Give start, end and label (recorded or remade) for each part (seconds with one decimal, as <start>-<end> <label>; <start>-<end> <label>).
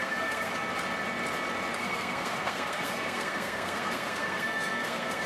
0.0-0.5 remade; 0.5-1.8 recorded; 1.8-5.3 remade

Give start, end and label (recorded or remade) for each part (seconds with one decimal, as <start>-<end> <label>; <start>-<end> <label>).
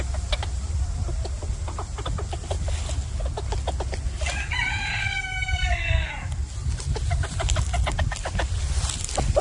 0.0-5.0 recorded; 5.0-6.1 remade; 6.1-9.4 recorded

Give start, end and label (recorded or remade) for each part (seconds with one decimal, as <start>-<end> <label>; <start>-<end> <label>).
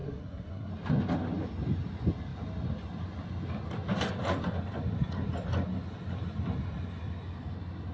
0.0-0.7 remade; 0.7-7.9 recorded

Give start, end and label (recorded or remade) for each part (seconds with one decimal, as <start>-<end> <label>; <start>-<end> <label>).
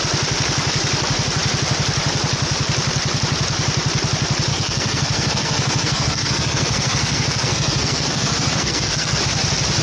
0.0-4.5 recorded; 4.5-9.2 remade; 9.2-9.8 recorded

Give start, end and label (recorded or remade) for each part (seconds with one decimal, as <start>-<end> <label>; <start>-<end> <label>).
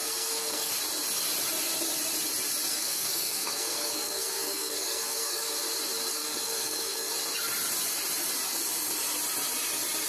0.0-0.7 remade; 0.7-2.7 recorded; 2.7-5.5 remade; 5.5-6.1 recorded; 6.1-7.1 remade; 7.1-10.1 recorded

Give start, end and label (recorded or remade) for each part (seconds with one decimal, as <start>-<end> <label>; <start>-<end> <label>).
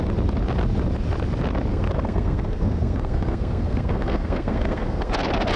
0.0-1.7 recorded; 1.7-5.1 remade; 5.1-5.6 recorded